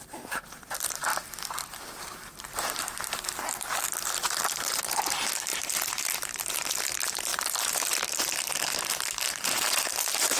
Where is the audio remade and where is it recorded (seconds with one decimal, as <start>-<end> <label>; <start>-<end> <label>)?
0.0-1.1 remade; 1.1-1.9 recorded; 1.9-10.4 remade